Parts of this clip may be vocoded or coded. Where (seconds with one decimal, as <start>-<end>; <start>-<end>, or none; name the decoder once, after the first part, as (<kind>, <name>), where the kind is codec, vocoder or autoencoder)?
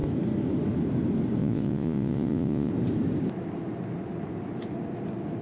1.4-2.7 (vocoder, Vocos)